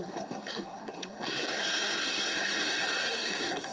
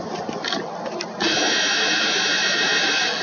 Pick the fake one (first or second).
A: first